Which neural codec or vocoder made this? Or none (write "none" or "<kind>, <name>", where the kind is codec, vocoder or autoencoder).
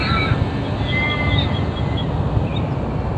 none